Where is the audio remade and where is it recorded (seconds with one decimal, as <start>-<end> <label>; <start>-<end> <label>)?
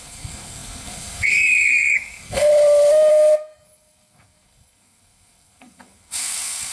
0.0-2.5 remade; 2.5-3.1 recorded; 3.1-6.7 remade